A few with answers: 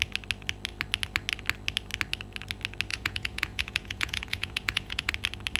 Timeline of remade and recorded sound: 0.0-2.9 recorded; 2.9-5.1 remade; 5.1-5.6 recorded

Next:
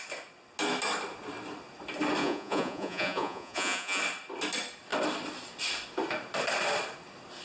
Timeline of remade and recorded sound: 0.0-2.2 recorded; 2.2-4.0 remade; 4.0-7.4 recorded

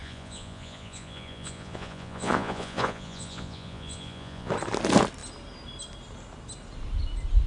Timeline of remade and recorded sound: 0.0-4.5 remade; 4.5-7.5 recorded

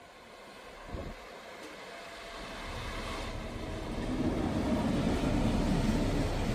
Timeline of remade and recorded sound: 0.0-6.5 recorded

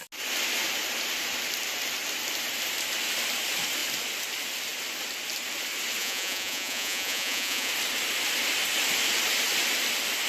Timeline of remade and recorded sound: 0.0-6.0 recorded; 6.0-7.7 remade; 7.7-10.3 recorded

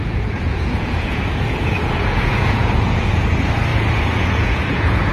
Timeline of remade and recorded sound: 0.0-3.1 remade; 3.1-3.7 recorded; 3.7-5.1 remade

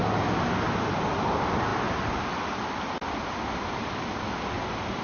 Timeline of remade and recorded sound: 0.0-5.0 recorded